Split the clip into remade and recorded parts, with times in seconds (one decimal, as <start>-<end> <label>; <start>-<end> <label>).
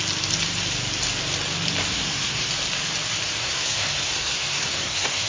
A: 0.0-1.9 recorded; 1.9-2.5 remade; 2.5-3.4 recorded; 3.4-5.3 remade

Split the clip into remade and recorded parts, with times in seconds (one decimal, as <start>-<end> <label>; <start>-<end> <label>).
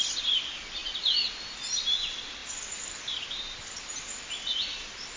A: 0.0-5.2 recorded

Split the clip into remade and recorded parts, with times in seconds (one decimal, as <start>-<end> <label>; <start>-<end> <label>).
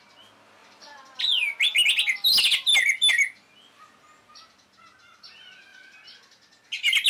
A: 0.0-7.1 recorded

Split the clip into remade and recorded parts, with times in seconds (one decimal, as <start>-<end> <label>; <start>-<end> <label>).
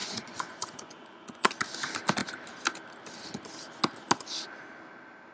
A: 0.0-1.5 remade; 1.5-5.3 recorded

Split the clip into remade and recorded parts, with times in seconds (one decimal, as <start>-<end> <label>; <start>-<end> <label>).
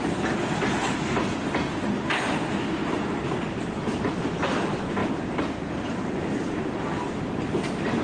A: 0.0-8.0 recorded